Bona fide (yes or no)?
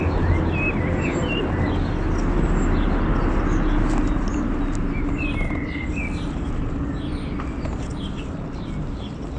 yes